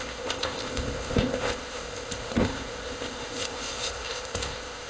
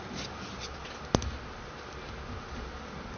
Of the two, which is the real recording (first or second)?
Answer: second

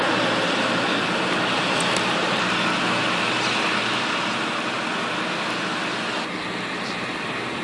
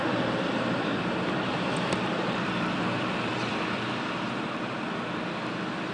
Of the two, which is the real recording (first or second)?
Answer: first